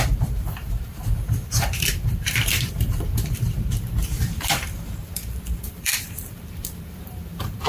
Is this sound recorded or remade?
remade